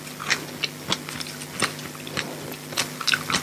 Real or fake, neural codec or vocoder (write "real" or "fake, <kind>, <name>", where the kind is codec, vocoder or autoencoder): real